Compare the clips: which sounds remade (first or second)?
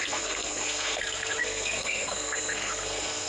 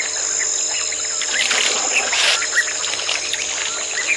first